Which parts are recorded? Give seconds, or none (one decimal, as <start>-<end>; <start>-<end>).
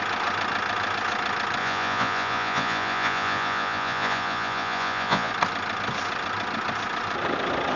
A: 0.0-1.6; 5.3-7.8